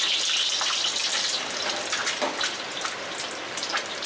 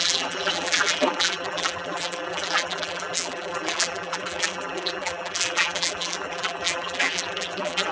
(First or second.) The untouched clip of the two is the first